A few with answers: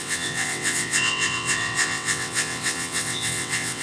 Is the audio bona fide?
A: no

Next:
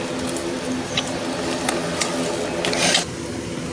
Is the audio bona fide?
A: yes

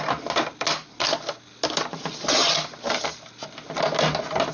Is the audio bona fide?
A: yes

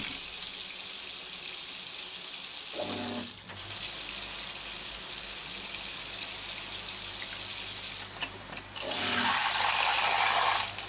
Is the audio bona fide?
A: yes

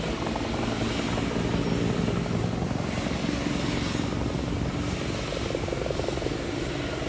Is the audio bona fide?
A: yes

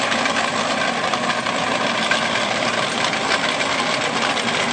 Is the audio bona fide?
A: yes